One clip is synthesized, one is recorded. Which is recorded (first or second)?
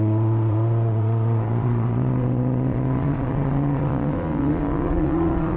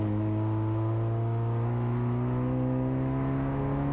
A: second